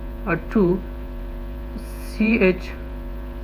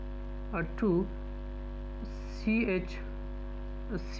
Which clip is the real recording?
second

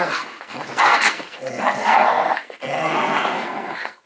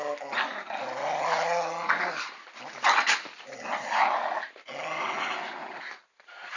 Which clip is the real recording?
second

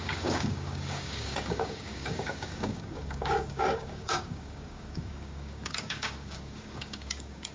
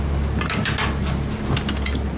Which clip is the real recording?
second